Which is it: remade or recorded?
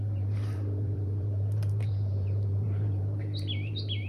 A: remade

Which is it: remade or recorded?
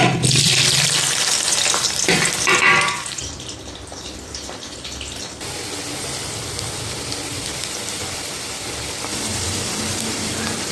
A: remade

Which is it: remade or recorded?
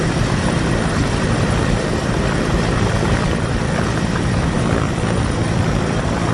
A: remade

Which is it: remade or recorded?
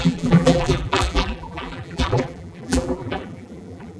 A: remade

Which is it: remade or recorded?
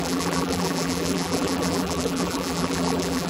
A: remade